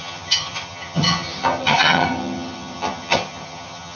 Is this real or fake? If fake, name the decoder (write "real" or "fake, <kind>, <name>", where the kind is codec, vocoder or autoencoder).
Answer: fake, vocoder, HiFi-GAN